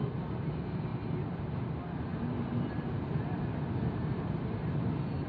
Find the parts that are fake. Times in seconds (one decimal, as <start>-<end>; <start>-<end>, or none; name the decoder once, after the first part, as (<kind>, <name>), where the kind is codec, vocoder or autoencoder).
none